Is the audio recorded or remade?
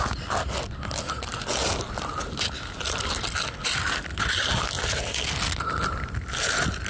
recorded